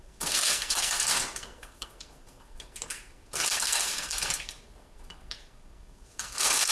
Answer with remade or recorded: remade